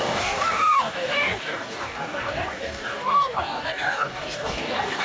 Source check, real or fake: fake